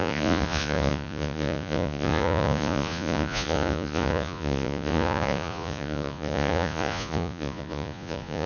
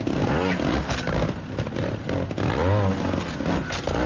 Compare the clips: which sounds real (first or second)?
second